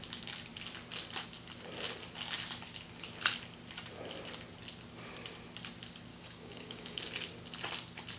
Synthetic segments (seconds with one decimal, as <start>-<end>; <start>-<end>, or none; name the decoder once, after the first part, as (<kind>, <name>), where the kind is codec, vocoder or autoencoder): 6.1-7.0 (codec, DAC)